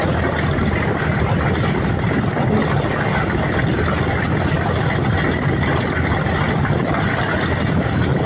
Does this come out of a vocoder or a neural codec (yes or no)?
no